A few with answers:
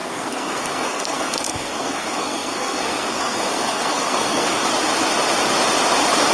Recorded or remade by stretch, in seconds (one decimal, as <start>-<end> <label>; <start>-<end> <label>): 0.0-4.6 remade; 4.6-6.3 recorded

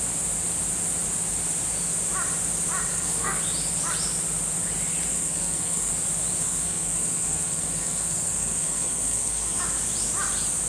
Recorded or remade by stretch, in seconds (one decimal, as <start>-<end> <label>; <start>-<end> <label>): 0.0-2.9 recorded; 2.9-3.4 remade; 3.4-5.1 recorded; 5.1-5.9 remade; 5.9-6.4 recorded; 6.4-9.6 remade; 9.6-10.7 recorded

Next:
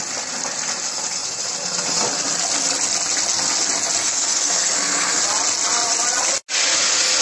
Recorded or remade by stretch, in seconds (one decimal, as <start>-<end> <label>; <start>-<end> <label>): 0.0-4.0 recorded; 4.0-5.2 remade; 5.2-7.2 recorded